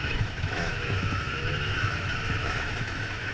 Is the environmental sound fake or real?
fake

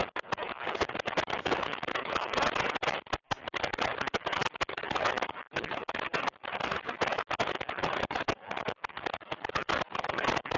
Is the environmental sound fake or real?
real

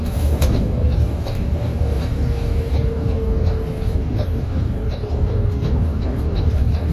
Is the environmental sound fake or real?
fake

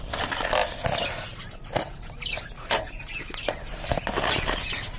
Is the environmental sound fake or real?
real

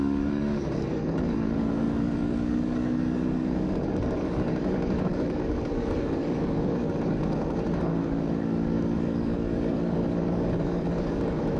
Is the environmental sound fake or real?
fake